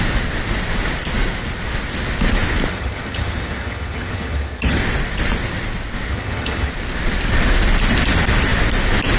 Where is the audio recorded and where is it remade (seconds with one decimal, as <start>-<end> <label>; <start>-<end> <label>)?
0.0-2.7 recorded; 2.7-4.8 remade; 4.8-6.1 recorded; 6.1-6.7 remade; 6.7-9.2 recorded